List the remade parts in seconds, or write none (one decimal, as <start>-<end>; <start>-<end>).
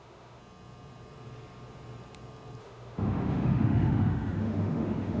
0.0-0.4; 2.6-5.2